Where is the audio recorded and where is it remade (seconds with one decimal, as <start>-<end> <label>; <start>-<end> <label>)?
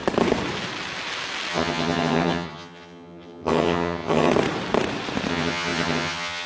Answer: 0.0-1.5 recorded; 1.5-4.3 remade; 4.3-5.3 recorded; 5.3-6.5 remade